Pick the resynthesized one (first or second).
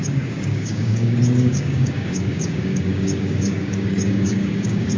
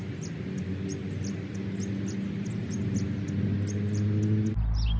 first